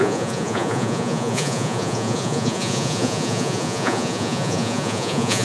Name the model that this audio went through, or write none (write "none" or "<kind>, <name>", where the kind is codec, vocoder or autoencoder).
vocoder, Vocos